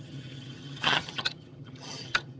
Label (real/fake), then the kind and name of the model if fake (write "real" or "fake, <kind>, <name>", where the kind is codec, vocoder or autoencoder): fake, vocoder, HiFi-GAN